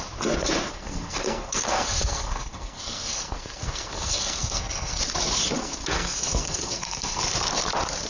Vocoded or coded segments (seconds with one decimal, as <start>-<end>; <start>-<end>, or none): 0.7-5.0; 5.6-7.2